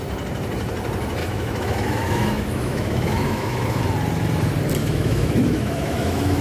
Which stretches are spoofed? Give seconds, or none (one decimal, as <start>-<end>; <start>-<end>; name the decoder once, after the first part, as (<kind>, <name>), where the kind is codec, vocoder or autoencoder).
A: 1.2-3.8 (autoencoder, DAC-VAE); 4.8-6.4